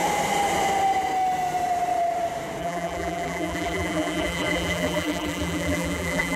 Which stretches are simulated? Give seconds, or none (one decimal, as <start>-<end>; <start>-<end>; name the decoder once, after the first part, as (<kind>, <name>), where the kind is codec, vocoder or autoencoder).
2.6-6.4 (vocoder, BigVGAN v2)